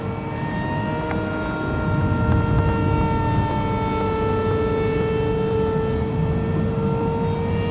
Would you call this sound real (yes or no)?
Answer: yes